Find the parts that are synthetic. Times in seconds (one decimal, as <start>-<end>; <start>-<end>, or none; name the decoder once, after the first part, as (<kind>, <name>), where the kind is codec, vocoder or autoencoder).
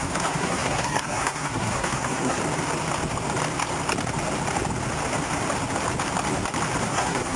0.0-2.4 (codec, SNAC); 6.8-7.4